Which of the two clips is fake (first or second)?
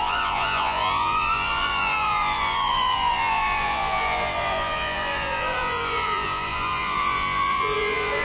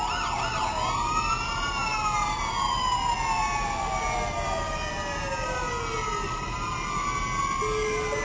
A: first